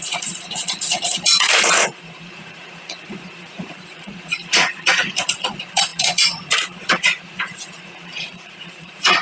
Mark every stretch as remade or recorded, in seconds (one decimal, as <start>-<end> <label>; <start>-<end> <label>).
0.0-9.2 remade